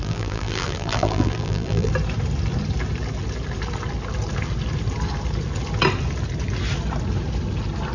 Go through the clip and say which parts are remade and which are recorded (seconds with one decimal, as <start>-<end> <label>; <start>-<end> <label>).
0.0-1.9 remade; 1.9-7.9 recorded